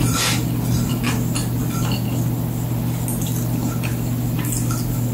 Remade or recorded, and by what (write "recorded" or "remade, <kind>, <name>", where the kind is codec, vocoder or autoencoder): recorded